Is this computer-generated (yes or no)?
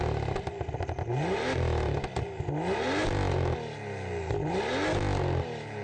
no